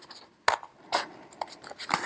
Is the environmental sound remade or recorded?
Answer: recorded